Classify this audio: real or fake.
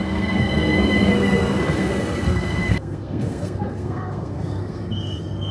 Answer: fake